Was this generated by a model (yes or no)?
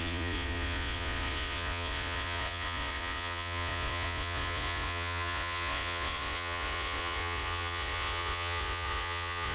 yes